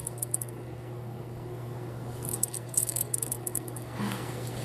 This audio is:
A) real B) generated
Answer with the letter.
B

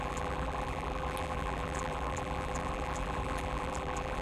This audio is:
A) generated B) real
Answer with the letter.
A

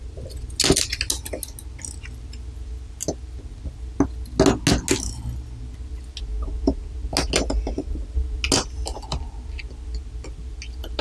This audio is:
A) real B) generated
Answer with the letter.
A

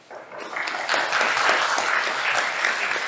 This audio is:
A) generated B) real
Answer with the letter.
B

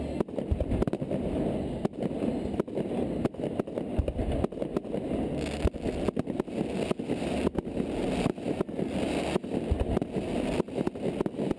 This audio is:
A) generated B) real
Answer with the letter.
B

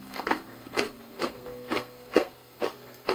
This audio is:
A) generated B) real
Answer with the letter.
A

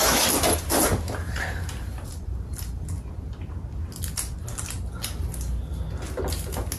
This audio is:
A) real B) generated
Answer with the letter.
A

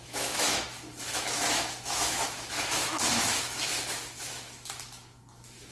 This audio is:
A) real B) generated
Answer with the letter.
B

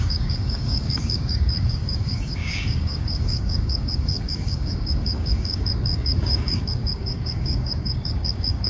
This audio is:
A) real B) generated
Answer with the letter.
B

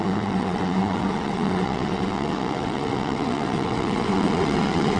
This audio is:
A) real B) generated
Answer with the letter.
B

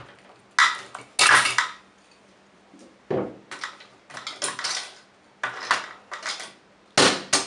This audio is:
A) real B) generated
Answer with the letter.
A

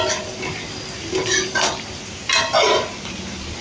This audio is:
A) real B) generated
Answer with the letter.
A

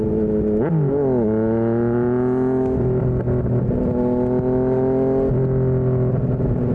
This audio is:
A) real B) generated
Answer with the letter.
A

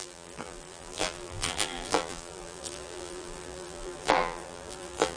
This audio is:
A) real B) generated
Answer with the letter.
B